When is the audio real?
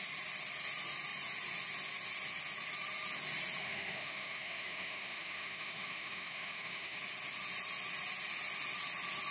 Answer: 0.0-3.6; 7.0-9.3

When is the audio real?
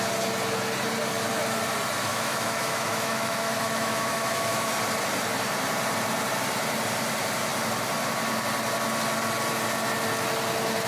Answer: 0.0-2.1; 4.8-10.9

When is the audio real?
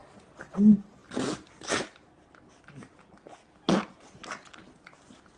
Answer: 0.0-5.4